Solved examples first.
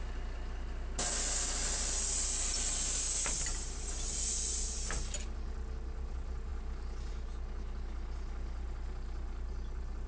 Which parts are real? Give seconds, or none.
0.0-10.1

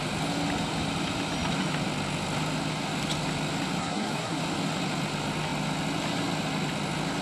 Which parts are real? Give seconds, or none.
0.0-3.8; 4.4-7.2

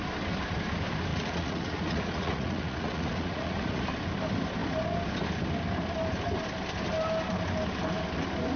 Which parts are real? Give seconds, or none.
0.0-1.1; 3.8-8.6

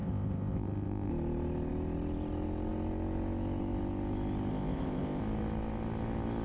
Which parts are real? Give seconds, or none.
1.1-4.5; 5.2-6.4

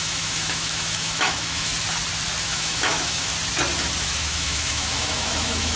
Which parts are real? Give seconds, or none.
1.7-2.4; 3.3-4.0